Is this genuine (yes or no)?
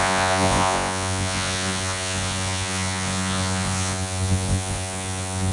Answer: no